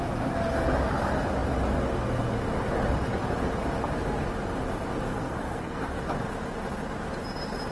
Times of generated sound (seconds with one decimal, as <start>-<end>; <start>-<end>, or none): 5.1-6.0